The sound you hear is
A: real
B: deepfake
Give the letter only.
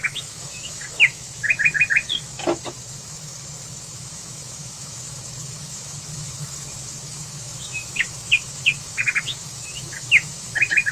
B